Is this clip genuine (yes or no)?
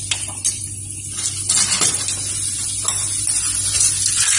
yes